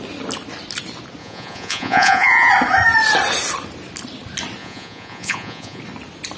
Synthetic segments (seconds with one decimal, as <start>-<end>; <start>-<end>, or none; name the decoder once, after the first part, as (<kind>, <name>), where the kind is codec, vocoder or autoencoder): 1.2-2.5 (vocoder, Vocos); 4.6-5.8